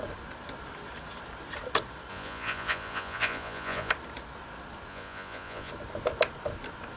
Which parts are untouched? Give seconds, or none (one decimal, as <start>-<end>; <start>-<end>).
0.0-2.1; 3.9-4.9; 5.7-7.0

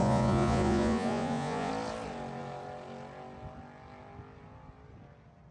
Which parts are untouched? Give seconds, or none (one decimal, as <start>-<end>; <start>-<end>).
1.7-5.5

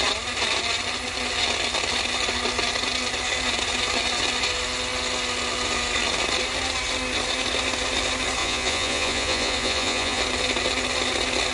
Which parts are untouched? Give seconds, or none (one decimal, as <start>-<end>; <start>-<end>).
0.0-8.4; 10.2-11.5

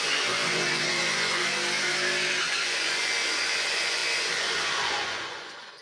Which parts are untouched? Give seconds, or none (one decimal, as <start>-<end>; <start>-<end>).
1.5-2.4

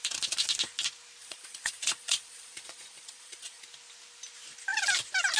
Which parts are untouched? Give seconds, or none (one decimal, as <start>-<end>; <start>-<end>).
0.0-1.2; 3.6-5.4

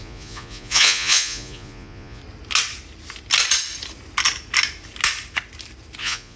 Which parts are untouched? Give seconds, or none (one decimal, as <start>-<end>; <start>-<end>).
2.2-6.0

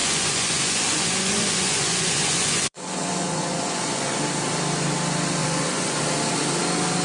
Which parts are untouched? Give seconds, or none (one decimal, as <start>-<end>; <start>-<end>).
4.2-5.4; 6.0-7.0